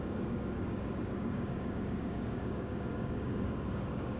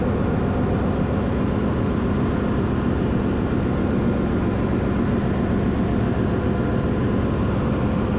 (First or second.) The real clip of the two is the second